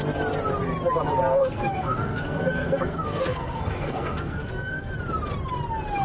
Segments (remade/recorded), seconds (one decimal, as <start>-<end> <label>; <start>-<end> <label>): 0.0-1.3 recorded; 1.3-4.9 remade; 4.9-6.0 recorded